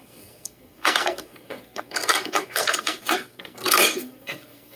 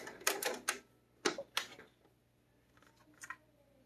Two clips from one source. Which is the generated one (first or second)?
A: first